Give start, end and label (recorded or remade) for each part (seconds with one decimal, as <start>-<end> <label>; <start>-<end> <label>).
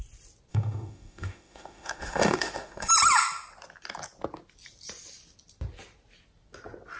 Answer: 0.0-0.5 recorded; 0.5-2.9 remade; 2.9-7.0 recorded